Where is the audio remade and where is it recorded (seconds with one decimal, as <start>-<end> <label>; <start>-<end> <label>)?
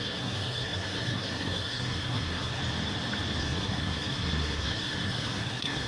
0.0-2.6 remade; 2.6-3.4 recorded; 3.4-5.9 remade